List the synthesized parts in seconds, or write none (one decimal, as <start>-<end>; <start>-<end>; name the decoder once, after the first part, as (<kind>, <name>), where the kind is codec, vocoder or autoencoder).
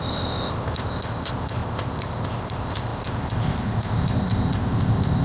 0.0-5.2 (codec, ZipCodec)